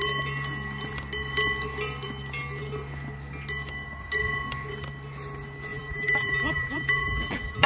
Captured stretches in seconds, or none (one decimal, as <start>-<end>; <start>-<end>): 0.0-5.7